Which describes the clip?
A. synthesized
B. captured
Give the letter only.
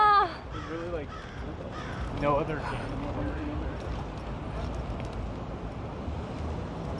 B